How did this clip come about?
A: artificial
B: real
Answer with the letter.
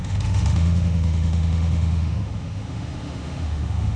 A